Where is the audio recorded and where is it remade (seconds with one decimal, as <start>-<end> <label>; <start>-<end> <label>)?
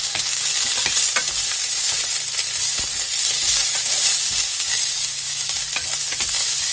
0.0-0.5 remade; 0.5-4.5 recorded; 4.5-5.6 remade; 5.6-6.7 recorded